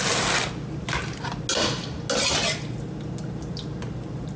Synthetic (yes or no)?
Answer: no